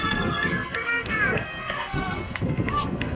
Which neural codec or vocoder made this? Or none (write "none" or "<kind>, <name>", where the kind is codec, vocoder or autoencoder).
codec, SNAC